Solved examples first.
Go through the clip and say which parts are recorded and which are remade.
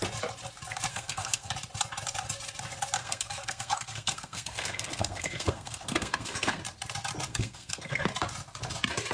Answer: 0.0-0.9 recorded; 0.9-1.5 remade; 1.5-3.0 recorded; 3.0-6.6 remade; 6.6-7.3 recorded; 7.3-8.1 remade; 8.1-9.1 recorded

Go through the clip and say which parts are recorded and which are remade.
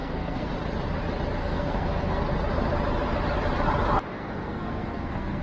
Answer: 0.0-0.5 remade; 0.5-1.4 recorded; 1.4-2.2 remade; 2.2-4.1 recorded; 4.1-5.4 remade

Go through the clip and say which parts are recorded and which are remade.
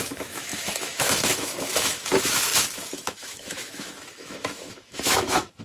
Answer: 0.0-5.6 remade